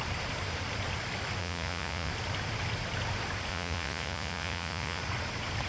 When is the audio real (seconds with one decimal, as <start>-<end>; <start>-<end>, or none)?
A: 0.0-1.4; 2.1-3.5; 5.0-5.7